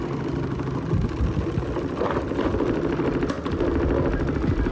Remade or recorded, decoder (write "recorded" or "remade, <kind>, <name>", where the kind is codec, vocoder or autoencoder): recorded